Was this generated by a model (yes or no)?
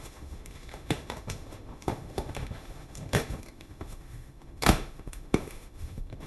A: yes